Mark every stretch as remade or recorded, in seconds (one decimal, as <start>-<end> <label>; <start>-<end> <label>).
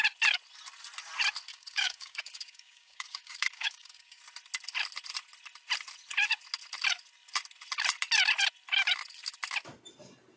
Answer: 0.0-1.5 recorded; 1.5-4.2 remade; 4.2-10.4 recorded